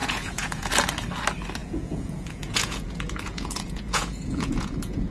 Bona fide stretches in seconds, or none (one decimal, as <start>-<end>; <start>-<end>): 0.7-1.6